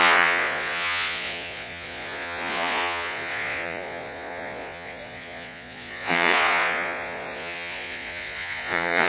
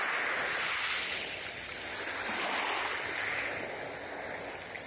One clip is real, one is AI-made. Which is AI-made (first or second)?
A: first